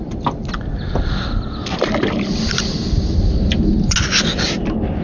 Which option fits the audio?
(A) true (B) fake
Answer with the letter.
A